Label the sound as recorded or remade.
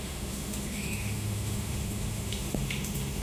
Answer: remade